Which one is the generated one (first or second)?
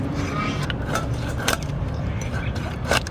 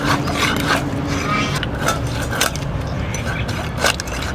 first